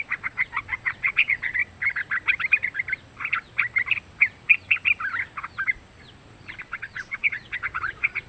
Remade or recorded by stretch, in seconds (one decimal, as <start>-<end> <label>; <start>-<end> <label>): 0.0-1.6 remade; 1.6-6.6 recorded; 6.6-8.3 remade